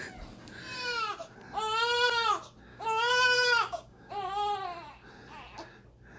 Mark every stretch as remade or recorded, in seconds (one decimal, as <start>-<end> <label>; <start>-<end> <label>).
0.0-2.7 recorded; 2.7-4.1 remade; 4.1-6.2 recorded